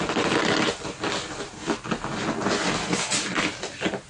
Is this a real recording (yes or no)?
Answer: yes